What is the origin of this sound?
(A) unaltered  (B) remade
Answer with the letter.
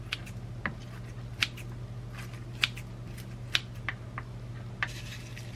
A